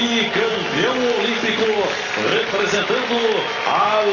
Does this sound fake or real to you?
real